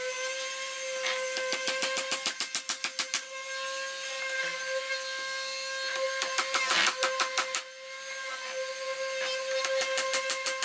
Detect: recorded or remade recorded